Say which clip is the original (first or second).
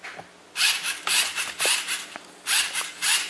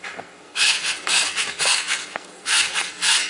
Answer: first